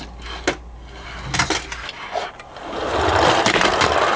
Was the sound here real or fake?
real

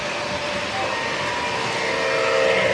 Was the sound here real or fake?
real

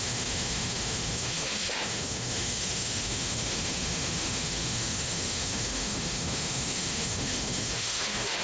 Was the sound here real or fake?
fake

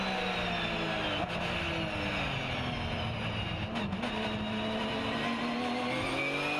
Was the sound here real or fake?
real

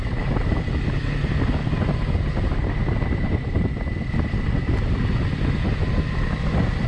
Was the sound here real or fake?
real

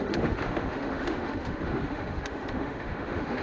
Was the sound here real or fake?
fake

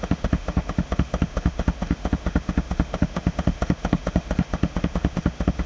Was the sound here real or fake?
fake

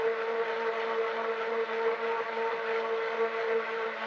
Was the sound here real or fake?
real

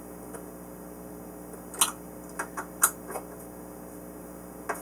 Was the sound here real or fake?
real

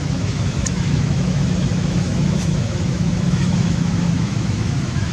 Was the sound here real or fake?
fake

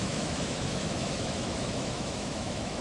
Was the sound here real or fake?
fake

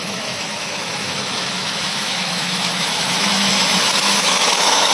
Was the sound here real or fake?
fake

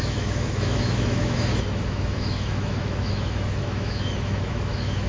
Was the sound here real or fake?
fake